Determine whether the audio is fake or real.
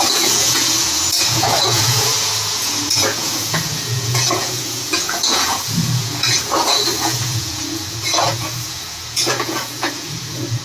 fake